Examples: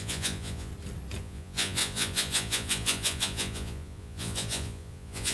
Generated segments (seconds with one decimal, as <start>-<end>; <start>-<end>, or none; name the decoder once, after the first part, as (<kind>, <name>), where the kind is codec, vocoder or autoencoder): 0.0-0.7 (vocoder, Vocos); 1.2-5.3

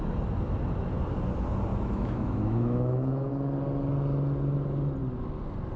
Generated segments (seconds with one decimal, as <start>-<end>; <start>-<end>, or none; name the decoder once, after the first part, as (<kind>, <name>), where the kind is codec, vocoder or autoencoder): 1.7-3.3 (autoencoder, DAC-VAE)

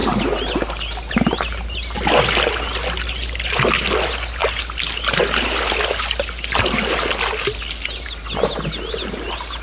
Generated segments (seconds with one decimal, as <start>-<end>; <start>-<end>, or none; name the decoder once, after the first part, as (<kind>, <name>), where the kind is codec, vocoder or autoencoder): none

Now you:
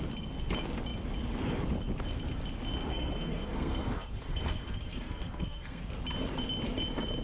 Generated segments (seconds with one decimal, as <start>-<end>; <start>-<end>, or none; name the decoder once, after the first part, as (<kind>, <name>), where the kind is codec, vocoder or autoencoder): 2.9-5.8 (codec, SNAC)

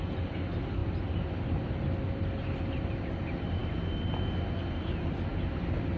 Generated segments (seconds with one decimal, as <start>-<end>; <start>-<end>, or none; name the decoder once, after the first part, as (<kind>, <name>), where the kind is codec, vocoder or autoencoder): none